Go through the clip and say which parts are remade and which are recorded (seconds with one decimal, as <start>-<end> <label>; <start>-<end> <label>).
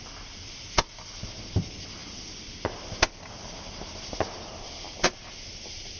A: 0.0-6.0 recorded